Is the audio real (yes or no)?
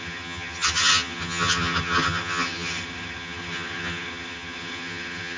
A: no